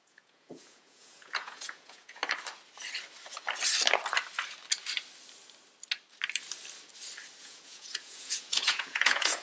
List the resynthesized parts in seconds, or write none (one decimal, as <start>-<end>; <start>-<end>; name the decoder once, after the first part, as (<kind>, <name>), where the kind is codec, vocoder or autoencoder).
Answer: 0.0-2.2 (vocoder, Vocos); 7.4-9.4